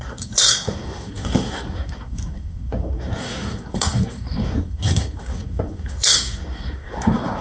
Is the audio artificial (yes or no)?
yes